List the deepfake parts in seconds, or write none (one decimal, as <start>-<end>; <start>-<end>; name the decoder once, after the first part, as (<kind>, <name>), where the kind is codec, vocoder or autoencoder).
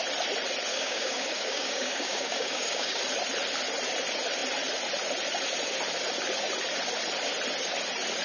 0.7-3.0 (codec, DAC)